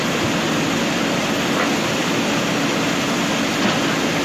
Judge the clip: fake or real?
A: real